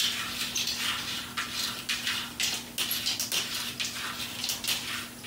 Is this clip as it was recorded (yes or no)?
yes